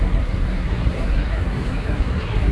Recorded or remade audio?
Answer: remade